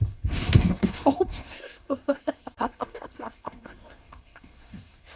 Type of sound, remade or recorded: remade